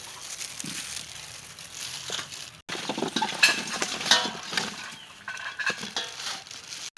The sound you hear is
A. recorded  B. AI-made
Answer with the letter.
A